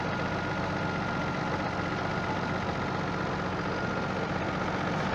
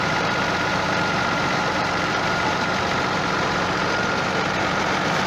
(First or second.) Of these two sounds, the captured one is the first